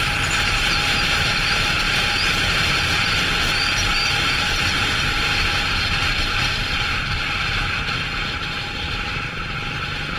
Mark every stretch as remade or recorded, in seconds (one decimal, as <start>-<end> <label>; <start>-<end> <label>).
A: 0.0-7.6 remade; 7.6-8.8 recorded; 8.8-10.2 remade